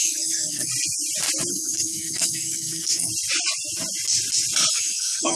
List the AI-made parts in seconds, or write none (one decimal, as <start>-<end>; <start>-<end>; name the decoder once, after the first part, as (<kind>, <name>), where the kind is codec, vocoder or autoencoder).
0.0-0.7 (codec, SNAC); 1.5-3.1; 4.7-5.4